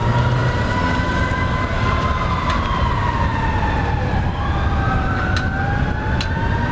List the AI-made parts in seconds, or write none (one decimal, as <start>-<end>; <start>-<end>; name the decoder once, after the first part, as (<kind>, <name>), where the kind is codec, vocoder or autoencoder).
none